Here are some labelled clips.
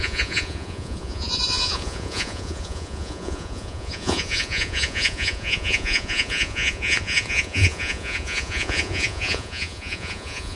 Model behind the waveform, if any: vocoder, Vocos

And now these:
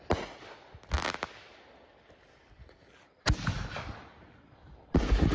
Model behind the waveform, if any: none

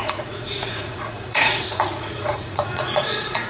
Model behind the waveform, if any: vocoder, Vocos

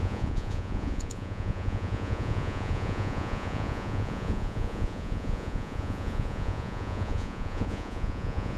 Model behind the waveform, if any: vocoder, Vocos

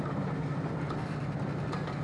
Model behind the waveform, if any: none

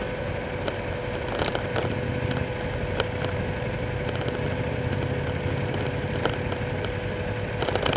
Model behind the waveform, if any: none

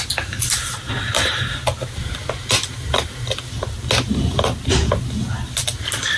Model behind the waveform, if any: none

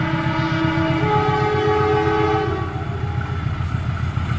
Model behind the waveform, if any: none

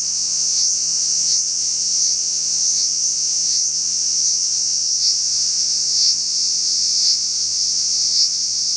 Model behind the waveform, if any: vocoder, Vocos